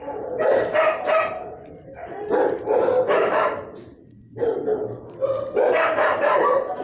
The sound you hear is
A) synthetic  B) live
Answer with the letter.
A